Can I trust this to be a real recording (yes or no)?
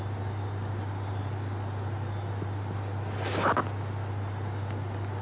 yes